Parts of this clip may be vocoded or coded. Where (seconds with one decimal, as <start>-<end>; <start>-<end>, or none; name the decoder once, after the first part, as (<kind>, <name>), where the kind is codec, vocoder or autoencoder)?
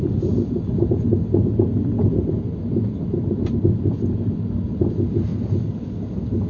none